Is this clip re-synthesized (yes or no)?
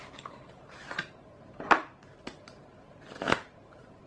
yes